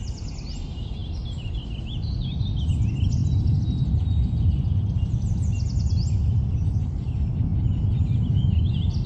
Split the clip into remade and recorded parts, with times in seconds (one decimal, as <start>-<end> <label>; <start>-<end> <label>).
0.0-9.1 recorded